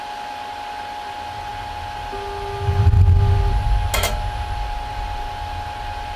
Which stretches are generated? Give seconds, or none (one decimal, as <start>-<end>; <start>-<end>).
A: none